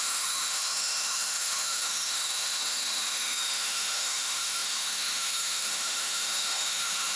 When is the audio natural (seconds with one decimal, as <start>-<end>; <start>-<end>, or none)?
none